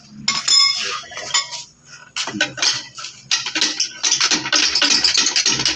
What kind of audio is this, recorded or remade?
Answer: recorded